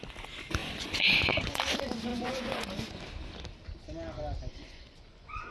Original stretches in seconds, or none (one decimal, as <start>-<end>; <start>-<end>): 0.0-0.6; 1.6-2.1; 3.0-4.5